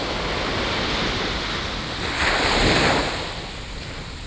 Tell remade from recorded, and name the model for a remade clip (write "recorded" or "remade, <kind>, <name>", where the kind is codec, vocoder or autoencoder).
recorded